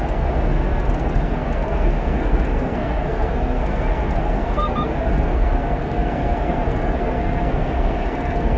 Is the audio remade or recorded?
remade